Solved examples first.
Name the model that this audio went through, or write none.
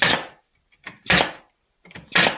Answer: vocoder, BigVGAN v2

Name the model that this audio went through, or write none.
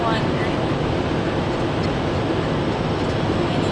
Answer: none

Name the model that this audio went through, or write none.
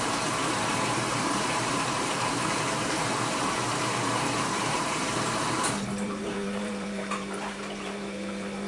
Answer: vocoder, BigVGAN v2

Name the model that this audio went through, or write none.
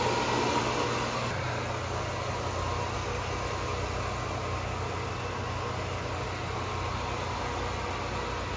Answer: none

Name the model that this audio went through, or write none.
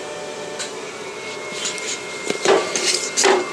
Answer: vocoder, BigVGAN v2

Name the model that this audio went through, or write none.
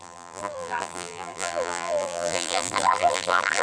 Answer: vocoder, BigVGAN v2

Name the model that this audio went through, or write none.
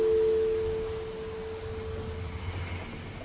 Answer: none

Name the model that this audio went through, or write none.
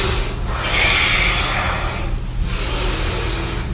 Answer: none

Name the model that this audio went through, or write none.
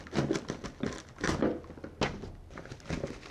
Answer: none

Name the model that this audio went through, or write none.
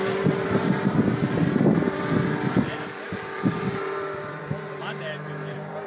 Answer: vocoder, BigVGAN v2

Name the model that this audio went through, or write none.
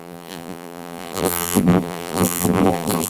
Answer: vocoder, BigVGAN v2